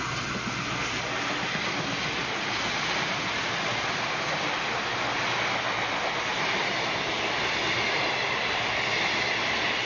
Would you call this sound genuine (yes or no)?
yes